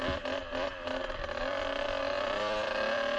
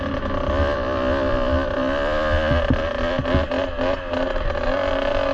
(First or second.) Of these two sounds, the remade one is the first